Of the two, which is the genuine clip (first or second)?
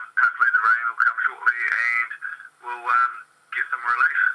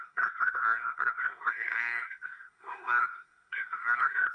first